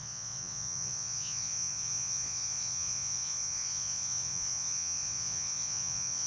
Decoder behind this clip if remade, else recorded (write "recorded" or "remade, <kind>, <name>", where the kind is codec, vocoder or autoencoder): remade, vocoder, Vocos